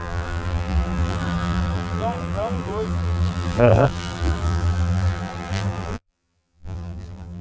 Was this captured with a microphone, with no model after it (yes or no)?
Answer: no